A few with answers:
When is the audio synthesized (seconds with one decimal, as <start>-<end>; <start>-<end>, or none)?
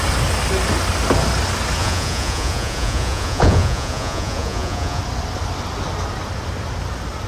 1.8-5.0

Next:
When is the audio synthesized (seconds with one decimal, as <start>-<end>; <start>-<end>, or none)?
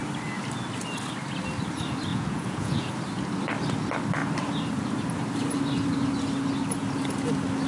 2.1-2.9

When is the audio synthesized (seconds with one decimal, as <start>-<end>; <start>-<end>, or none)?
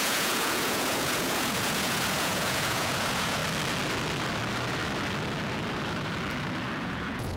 0.0-3.4; 6.8-7.4